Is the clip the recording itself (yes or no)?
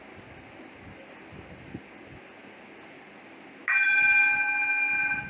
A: yes